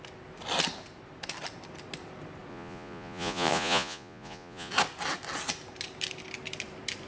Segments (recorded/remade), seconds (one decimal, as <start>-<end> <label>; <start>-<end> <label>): 0.0-2.5 recorded; 2.5-4.7 remade; 4.7-7.1 recorded